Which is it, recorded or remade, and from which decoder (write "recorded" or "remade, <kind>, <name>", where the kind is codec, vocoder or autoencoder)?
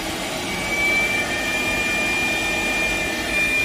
recorded